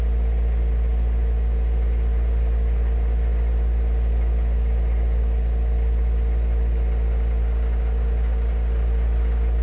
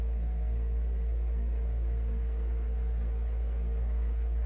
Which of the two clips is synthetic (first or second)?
second